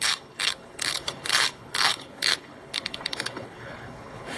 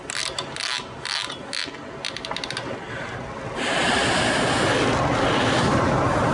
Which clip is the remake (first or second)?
first